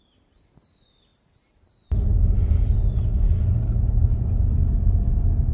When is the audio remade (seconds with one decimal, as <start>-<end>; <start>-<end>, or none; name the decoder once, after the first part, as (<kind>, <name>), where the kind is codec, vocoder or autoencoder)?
none